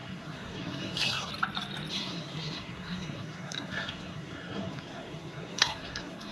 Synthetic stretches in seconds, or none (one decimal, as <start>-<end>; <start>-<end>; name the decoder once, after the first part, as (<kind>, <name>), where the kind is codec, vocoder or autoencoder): 0.0-1.3 (codec, SNAC); 1.9-6.3